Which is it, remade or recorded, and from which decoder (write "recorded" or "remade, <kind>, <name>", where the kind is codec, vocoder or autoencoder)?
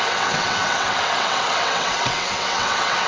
remade, vocoder, WaveNeXt